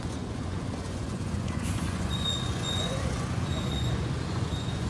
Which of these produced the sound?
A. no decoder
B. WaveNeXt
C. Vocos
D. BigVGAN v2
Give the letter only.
C